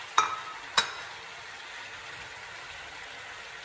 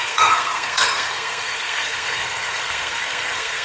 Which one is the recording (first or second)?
first